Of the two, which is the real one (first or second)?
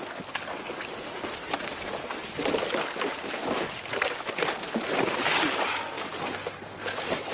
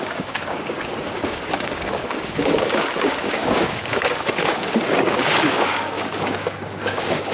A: first